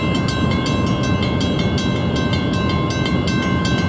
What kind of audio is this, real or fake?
real